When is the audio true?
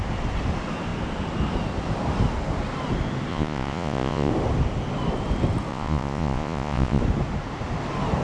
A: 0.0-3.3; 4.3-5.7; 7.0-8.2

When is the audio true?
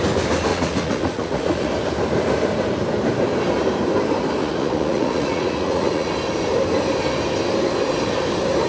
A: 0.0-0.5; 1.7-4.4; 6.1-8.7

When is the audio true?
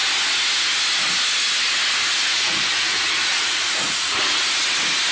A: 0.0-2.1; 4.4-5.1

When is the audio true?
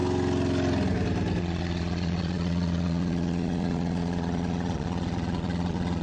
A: 0.0-1.4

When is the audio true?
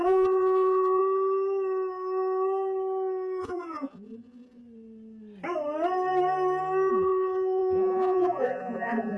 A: 1.0-3.4; 4.6-6.9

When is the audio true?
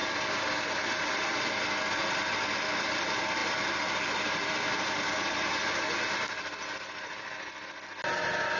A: 0.0-8.6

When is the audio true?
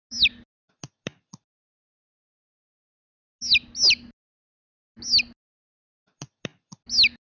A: 0.0-7.4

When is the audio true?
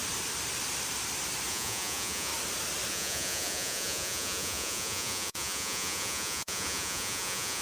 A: 0.0-1.5; 2.3-2.9